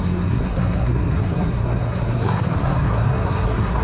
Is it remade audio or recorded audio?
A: remade